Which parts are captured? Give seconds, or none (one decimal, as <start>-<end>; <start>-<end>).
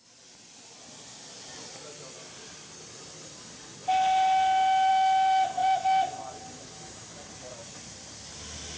0.0-8.8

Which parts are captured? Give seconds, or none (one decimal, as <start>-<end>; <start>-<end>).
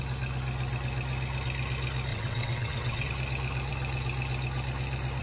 0.0-2.1; 3.1-5.2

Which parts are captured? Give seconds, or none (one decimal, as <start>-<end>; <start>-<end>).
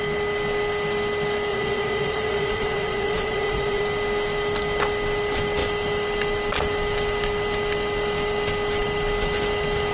0.0-1.5; 3.8-9.9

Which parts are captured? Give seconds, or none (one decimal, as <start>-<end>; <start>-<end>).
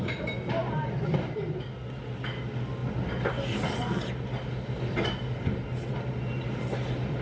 0.0-7.2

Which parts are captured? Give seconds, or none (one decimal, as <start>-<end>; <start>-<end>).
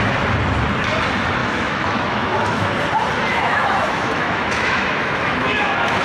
0.0-1.4; 2.7-3.3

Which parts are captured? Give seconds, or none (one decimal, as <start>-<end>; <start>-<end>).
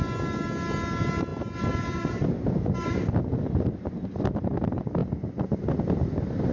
0.0-6.5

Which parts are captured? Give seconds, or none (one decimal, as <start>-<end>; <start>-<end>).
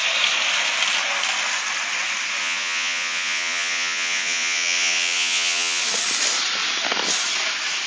0.0-2.4; 5.8-7.9